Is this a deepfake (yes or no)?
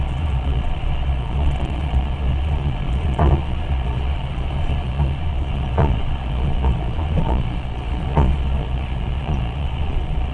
yes